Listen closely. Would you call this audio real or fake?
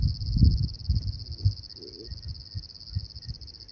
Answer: real